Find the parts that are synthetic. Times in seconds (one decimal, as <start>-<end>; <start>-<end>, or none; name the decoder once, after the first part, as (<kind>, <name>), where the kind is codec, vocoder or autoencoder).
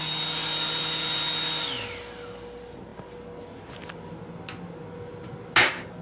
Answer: none